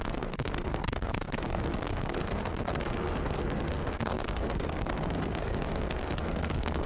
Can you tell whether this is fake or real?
fake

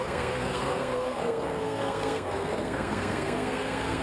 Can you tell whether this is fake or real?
fake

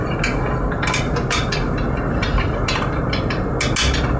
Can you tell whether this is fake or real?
real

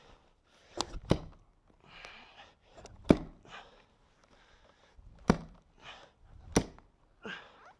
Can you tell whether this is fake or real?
real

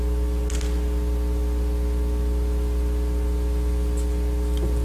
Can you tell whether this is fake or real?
real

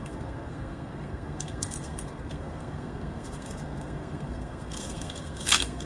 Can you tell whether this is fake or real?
fake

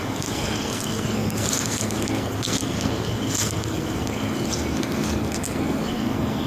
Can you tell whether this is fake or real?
fake